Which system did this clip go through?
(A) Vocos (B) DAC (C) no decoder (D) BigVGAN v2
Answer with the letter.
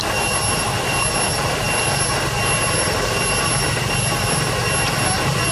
C